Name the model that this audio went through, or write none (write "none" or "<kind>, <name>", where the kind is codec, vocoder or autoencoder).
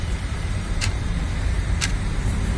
vocoder, BigVGAN v2